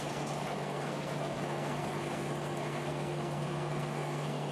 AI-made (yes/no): yes